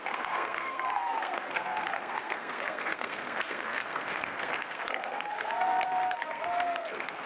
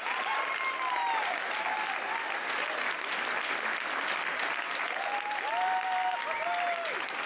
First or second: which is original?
second